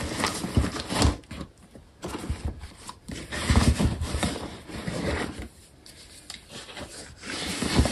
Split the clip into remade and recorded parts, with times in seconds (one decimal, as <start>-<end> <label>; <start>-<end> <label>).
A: 0.0-2.6 recorded; 2.6-5.6 remade; 5.6-6.9 recorded; 6.9-7.9 remade